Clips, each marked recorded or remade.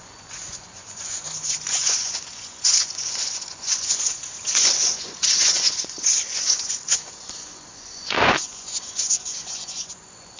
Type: remade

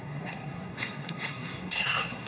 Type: remade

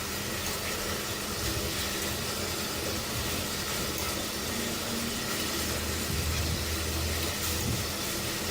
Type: recorded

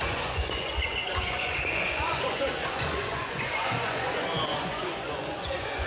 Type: remade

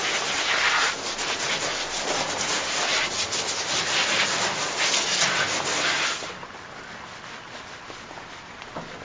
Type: recorded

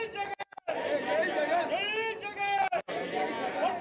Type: recorded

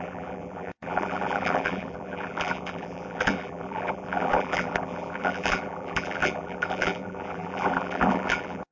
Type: remade